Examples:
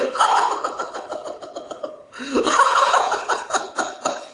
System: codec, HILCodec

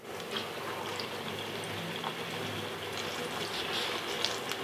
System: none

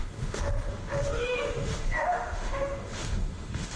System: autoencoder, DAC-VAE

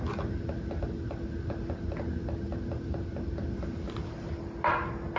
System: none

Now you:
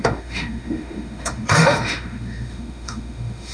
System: autoencoder, DAC-VAE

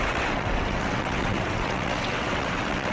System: vocoder, WaveNeXt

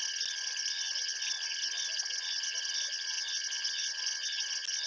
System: none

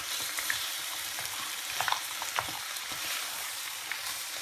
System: vocoder, BigVGAN v2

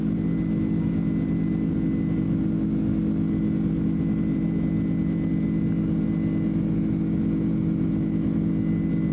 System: none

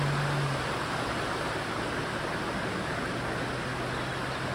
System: none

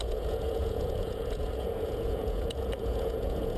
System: vocoder, Vocos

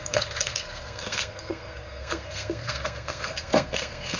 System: codec, SNAC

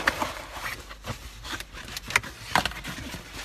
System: none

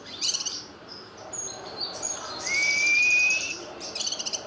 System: vocoder, BigVGAN v2